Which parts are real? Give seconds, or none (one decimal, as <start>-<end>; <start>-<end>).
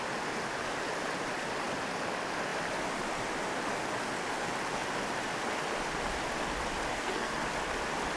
0.0-6.9; 7.4-8.2